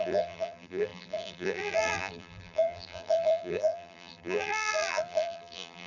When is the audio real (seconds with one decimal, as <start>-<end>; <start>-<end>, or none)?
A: none